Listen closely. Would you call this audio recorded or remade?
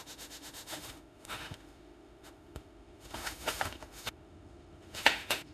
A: remade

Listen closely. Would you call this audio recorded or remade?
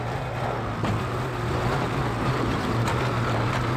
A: recorded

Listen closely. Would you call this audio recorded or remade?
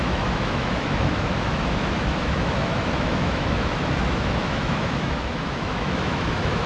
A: remade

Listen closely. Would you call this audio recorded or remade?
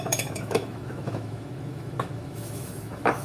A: remade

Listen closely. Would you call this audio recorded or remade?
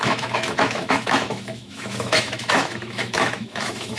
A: remade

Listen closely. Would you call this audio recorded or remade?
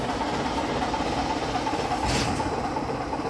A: recorded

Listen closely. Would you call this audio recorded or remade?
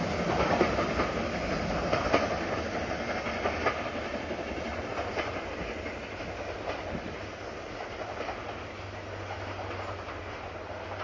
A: recorded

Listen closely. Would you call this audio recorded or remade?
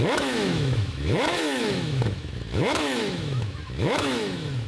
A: remade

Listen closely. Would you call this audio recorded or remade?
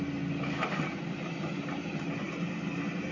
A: recorded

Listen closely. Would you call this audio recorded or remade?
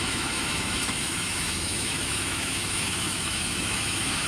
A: remade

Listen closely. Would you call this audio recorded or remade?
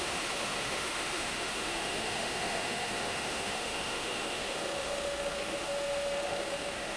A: remade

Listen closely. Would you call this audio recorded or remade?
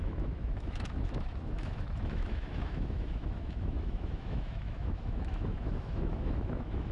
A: remade